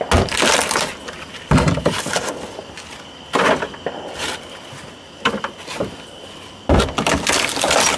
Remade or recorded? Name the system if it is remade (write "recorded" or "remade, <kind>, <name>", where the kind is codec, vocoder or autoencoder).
recorded